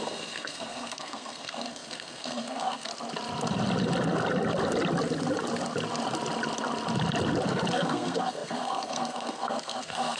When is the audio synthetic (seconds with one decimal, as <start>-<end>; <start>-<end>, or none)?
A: 0.0-2.9; 7.7-10.2